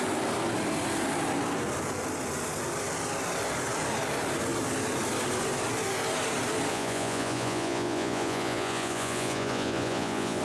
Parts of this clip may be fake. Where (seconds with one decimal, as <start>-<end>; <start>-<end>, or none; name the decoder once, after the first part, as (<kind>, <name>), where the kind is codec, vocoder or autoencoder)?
6.7-10.4 (vocoder, Vocos)

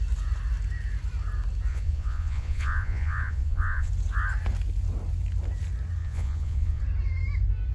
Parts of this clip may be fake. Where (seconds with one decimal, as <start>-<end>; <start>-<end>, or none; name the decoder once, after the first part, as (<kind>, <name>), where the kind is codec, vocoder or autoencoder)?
1.7-3.9 (vocoder, Vocos); 6.0-6.8